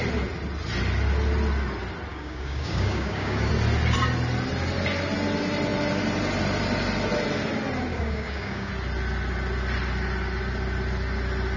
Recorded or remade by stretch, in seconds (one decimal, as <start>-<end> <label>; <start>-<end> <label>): 0.0-2.1 recorded; 2.1-3.5 remade; 3.5-7.9 recorded; 7.9-8.7 remade; 8.7-11.6 recorded